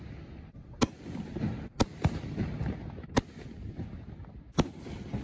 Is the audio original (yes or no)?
yes